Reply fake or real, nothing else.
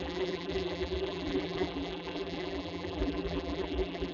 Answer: fake